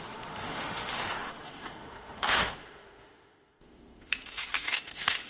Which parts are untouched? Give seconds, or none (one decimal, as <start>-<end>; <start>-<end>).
none